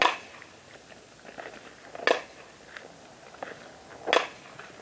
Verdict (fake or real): real